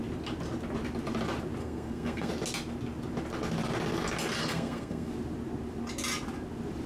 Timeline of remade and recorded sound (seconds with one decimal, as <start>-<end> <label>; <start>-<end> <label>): 0.0-1.6 recorded; 1.6-2.3 remade; 2.3-4.4 recorded; 4.4-5.1 remade; 5.1-6.9 recorded